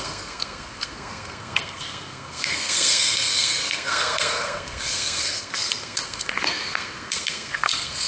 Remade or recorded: remade